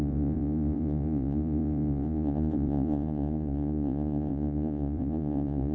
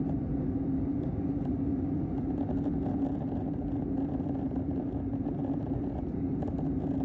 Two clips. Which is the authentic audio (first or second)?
second